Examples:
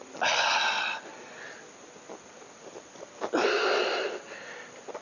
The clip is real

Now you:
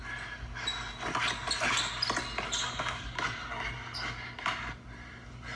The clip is real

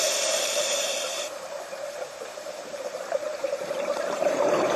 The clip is fake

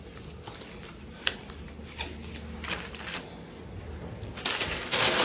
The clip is real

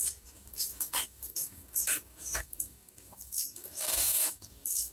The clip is fake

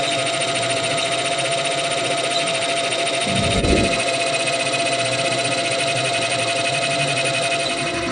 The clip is fake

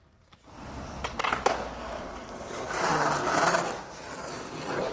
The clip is real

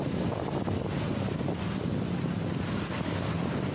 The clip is real